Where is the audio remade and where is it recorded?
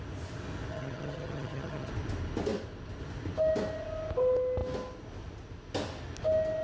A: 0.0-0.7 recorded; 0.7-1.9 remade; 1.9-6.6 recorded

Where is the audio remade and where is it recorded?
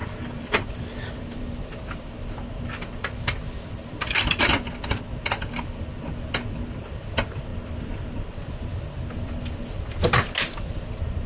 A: 0.0-4.0 remade; 4.0-7.5 recorded; 7.5-8.4 remade; 8.4-11.3 recorded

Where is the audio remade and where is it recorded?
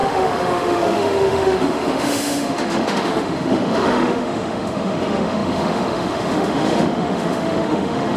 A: 0.0-8.2 remade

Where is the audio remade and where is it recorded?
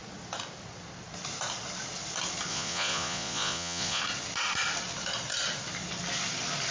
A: 0.0-2.5 recorded; 2.5-4.0 remade; 4.0-6.7 recorded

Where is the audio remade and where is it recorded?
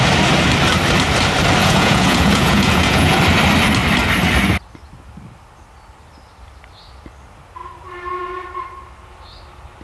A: 0.0-1.6 recorded; 1.6-3.2 remade; 3.2-9.8 recorded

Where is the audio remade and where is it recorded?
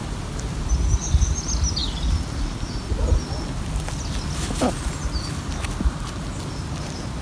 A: 0.0-7.2 recorded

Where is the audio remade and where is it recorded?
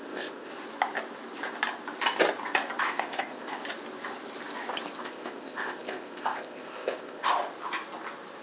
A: 0.0-0.5 remade; 0.5-2.8 recorded; 2.8-3.6 remade; 3.6-5.0 recorded; 5.0-7.3 remade; 7.3-8.4 recorded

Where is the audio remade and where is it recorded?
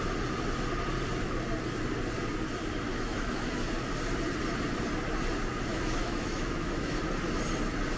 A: 0.0-2.9 recorded; 2.9-3.7 remade; 3.7-5.7 recorded; 5.7-7.0 remade; 7.0-8.0 recorded